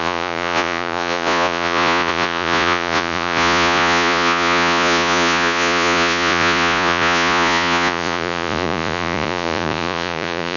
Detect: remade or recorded remade